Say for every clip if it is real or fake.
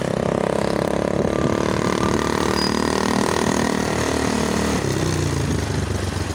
real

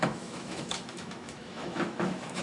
fake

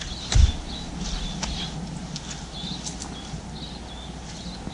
real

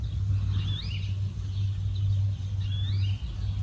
real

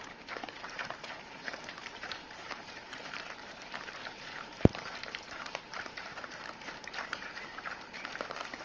fake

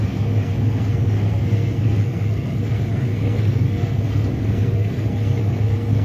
fake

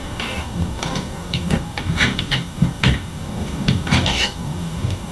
fake